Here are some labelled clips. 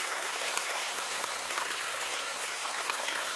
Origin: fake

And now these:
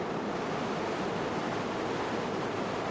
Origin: real